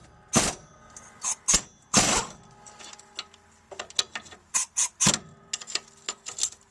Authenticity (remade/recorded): recorded